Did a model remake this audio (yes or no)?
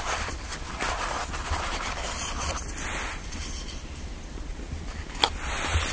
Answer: no